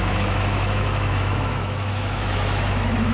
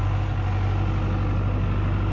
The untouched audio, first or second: second